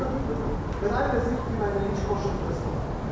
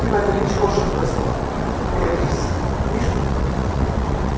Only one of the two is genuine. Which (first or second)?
first